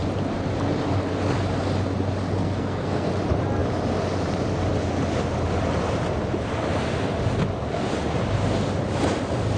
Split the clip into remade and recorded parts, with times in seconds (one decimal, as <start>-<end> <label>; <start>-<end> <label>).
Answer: 0.0-2.4 recorded; 2.4-3.1 remade; 3.1-9.6 recorded